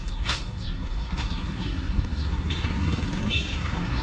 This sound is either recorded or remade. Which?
remade